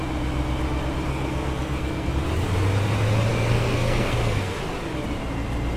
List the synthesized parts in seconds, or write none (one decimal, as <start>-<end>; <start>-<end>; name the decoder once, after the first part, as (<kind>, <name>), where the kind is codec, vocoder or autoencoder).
1.1-2.1 (codec, SNAC); 3.3-4.6